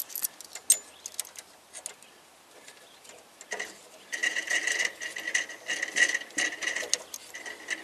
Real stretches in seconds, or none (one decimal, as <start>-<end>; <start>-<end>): 0.0-4.2; 5.1-7.8